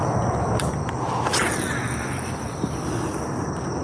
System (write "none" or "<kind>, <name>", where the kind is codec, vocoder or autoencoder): none